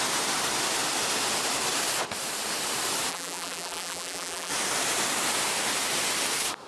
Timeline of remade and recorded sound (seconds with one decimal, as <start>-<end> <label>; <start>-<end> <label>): 0.0-3.1 recorded; 3.1-4.5 remade; 4.5-6.7 recorded